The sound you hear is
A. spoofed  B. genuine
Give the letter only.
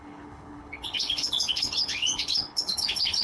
A